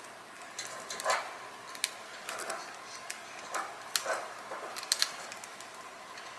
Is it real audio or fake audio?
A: real